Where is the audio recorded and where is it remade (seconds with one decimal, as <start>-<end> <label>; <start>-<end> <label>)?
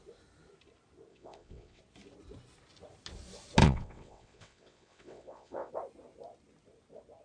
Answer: 0.0-1.1 recorded; 1.1-1.8 remade; 1.8-3.6 recorded; 3.6-5.7 remade; 5.7-7.2 recorded